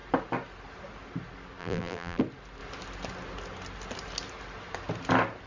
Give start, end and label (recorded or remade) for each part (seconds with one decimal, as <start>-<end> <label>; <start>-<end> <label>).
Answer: 0.0-1.6 recorded; 1.6-2.2 remade; 2.2-5.5 recorded